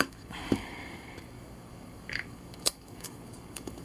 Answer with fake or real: fake